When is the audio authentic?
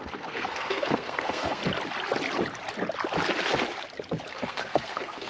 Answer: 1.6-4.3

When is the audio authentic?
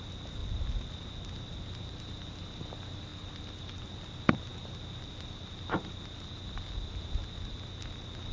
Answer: 0.0-8.3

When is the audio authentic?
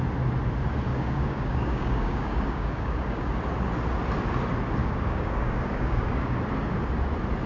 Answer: 0.0-0.9; 3.4-4.8; 6.4-7.5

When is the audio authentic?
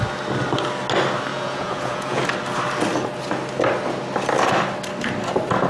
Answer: 0.0-1.3; 2.2-5.7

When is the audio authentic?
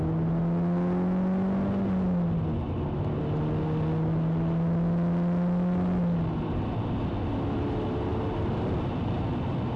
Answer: 0.0-9.8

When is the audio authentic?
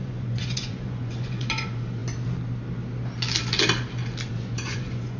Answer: 2.0-4.3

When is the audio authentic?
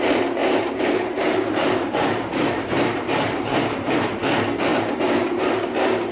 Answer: 0.0-0.4; 4.1-4.7; 5.4-6.1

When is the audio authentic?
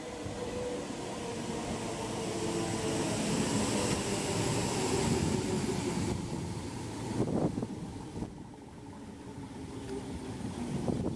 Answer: 0.0-11.2